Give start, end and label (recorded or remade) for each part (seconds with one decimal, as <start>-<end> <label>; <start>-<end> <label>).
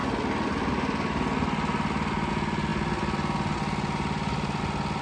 0.0-5.0 recorded